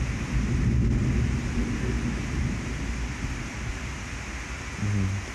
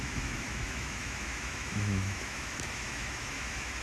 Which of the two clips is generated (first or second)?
second